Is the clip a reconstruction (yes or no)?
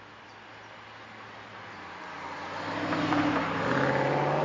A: no